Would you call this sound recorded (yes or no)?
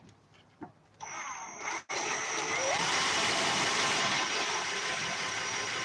no